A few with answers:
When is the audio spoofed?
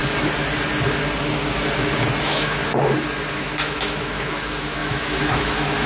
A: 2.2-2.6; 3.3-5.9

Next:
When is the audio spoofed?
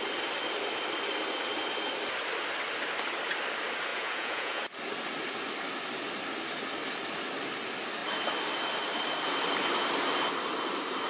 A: 3.9-4.6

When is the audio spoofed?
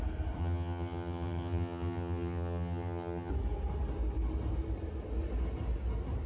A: 0.4-3.3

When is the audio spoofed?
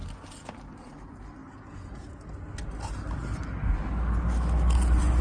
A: 1.4-2.5